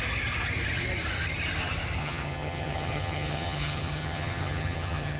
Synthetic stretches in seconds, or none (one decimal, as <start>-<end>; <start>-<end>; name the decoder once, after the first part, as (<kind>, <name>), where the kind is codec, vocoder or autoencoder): 2.0-5.2 (vocoder, HiFi-GAN)